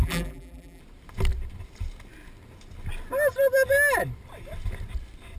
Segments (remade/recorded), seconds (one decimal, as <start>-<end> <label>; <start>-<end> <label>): 0.0-0.8 remade; 0.8-5.4 recorded

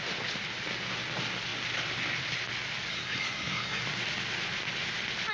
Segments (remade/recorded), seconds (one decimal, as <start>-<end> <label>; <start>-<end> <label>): 0.0-2.9 recorded; 2.9-3.8 remade; 3.8-5.3 recorded

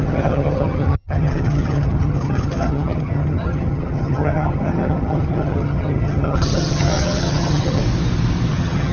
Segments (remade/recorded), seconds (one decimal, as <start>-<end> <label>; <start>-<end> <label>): 0.0-7.8 remade; 7.8-8.5 recorded; 8.5-8.9 remade

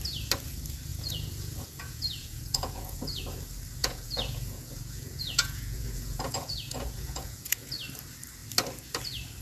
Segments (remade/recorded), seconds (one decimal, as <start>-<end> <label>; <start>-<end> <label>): 0.0-0.9 recorded; 0.9-3.2 remade; 3.2-3.8 recorded; 3.8-7.7 remade; 7.7-9.4 recorded

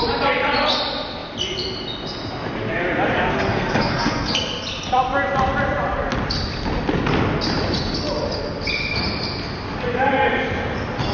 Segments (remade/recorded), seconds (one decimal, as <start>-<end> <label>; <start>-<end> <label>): 0.0-3.3 recorded; 3.3-4.3 remade; 4.3-11.1 recorded

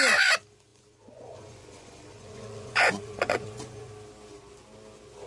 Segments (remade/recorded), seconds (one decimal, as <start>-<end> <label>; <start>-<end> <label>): 0.0-0.7 recorded; 0.7-3.9 remade; 3.9-5.3 recorded